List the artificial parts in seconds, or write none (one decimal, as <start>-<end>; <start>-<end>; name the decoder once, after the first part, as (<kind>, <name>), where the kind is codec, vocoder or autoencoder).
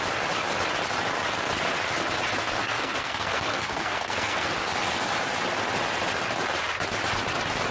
2.6-4.5 (codec, SNAC)